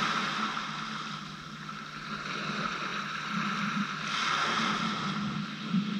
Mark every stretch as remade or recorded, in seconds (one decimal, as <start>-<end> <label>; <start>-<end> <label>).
0.0-6.0 recorded